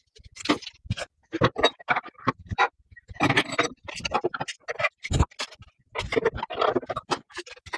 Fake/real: real